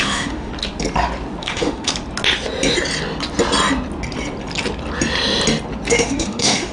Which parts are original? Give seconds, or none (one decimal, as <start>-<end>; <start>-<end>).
0.5-1.4; 1.9-5.9